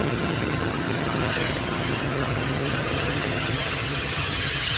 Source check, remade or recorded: remade